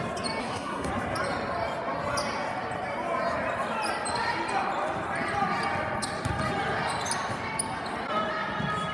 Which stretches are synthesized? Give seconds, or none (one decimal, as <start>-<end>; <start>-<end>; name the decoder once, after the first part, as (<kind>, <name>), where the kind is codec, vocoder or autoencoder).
0.4-0.9 (codec, SNAC)